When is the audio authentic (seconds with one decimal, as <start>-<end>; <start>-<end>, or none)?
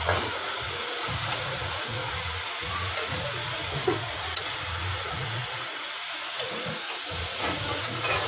none